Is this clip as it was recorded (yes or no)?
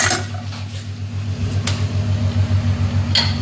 yes